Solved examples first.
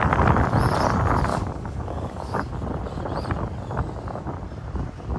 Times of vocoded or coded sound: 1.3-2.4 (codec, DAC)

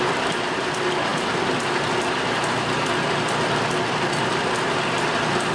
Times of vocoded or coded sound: none